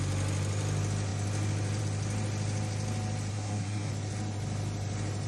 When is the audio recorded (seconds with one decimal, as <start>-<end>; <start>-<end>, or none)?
0.0-3.3; 3.9-5.3